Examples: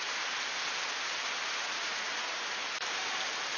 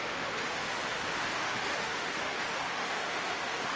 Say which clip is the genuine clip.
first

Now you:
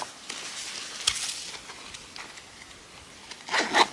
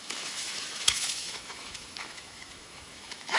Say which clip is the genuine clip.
first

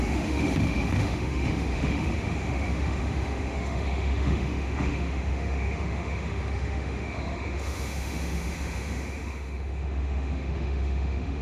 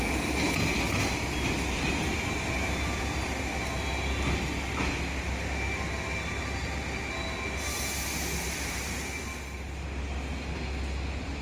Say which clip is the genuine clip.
second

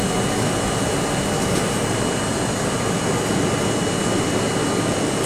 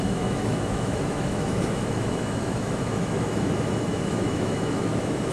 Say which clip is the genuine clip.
first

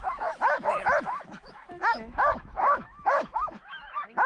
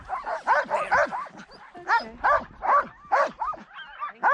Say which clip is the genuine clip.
second